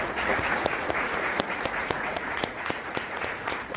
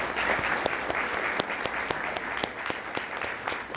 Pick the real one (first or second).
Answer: second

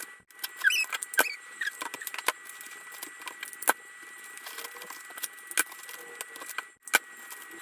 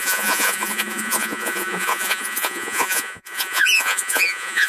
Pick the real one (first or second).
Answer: first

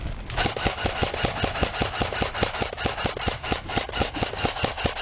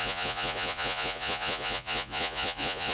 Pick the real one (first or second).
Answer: first